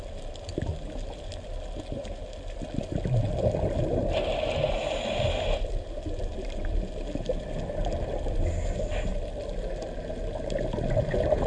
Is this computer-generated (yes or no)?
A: no